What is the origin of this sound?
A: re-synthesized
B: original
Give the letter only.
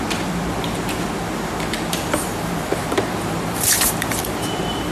A